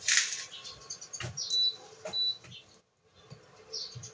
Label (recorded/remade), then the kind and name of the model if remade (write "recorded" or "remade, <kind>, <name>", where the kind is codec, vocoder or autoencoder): recorded